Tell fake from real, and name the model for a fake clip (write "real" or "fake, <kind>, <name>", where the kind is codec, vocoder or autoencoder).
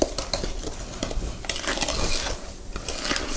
real